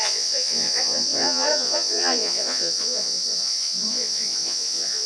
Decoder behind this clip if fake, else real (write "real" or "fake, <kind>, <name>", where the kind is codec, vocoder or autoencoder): fake, vocoder, Vocos